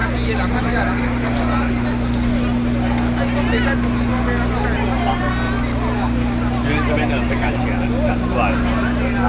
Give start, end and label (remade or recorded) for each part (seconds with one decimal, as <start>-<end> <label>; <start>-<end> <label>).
0.0-9.3 recorded